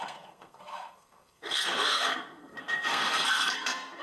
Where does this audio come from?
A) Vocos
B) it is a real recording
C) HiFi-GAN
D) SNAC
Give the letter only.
D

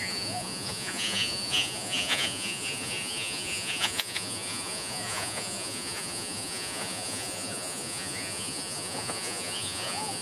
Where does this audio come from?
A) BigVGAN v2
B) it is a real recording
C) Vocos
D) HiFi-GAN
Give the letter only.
C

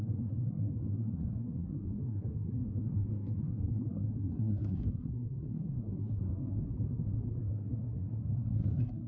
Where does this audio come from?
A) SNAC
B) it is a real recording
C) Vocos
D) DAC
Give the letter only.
A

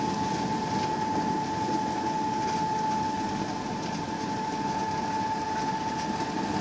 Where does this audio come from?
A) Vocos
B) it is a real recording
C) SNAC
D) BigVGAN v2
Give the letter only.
B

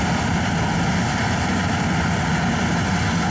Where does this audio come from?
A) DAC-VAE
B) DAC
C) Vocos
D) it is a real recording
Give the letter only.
D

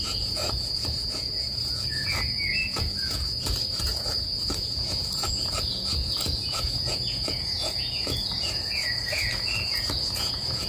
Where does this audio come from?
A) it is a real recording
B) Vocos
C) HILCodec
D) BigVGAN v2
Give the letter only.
B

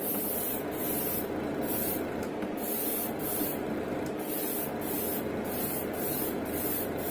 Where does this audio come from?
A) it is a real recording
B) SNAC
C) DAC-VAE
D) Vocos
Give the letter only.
A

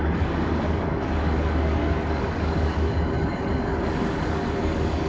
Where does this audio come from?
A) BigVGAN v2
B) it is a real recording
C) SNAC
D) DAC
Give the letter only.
D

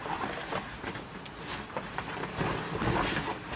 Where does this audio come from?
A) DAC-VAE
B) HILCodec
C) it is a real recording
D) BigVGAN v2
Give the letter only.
C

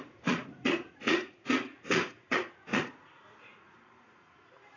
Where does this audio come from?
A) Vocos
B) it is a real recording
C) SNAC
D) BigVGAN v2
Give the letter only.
A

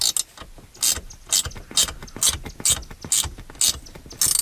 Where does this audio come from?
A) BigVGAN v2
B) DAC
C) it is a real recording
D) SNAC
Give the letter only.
C